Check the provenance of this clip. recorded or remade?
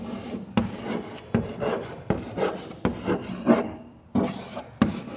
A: recorded